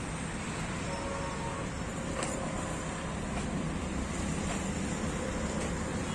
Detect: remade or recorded recorded